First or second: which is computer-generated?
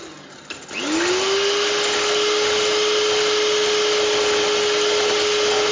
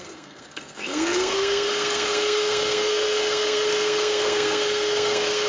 second